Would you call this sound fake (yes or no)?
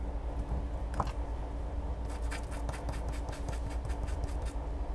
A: no